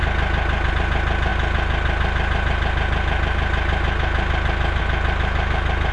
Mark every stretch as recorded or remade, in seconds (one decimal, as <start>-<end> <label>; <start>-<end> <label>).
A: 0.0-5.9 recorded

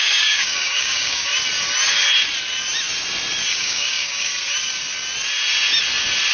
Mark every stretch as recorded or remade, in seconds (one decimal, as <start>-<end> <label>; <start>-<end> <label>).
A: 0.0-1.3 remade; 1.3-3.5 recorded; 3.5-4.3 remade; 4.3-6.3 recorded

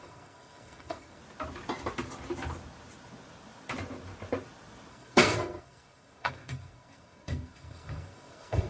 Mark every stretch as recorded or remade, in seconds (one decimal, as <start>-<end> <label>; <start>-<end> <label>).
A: 0.0-1.2 remade; 1.2-4.9 recorded; 4.9-8.7 remade

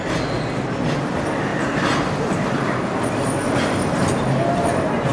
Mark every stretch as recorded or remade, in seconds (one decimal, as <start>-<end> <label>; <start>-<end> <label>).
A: 0.0-5.1 recorded